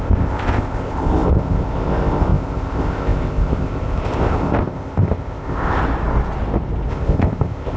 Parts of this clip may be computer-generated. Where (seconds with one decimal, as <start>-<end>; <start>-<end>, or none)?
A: 0.0-5.8; 6.9-7.8